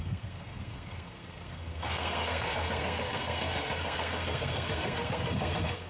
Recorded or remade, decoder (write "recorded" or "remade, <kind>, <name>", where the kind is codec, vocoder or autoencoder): remade, codec, SNAC